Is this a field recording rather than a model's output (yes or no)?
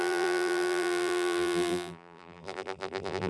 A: no